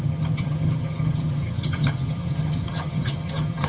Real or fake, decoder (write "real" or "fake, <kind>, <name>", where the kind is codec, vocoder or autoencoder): fake, vocoder, HiFi-GAN